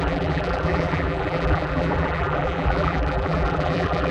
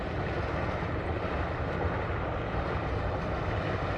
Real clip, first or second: second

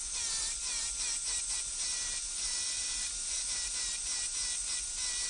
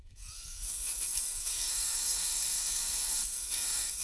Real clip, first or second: first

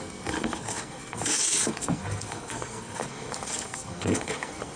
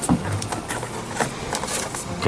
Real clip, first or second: second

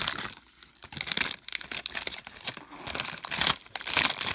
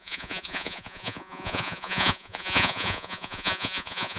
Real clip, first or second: first